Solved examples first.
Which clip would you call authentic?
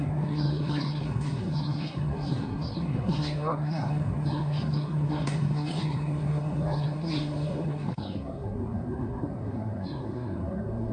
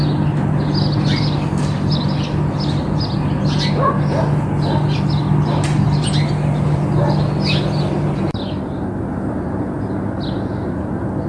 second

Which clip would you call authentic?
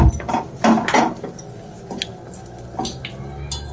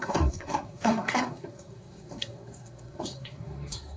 first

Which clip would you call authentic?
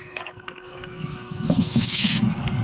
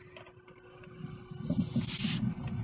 second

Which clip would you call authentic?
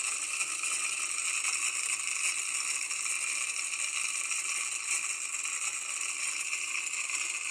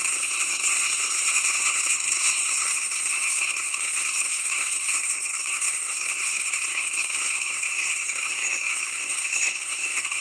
first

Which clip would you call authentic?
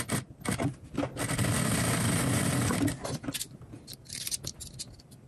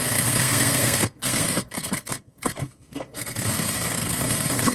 first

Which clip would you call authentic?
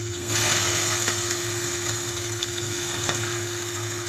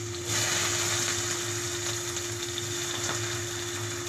second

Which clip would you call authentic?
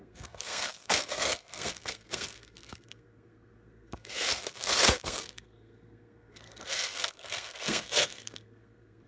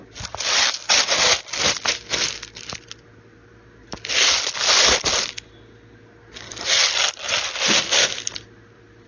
second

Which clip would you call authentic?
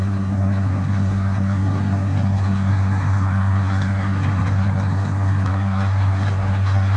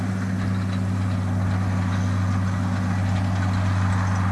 second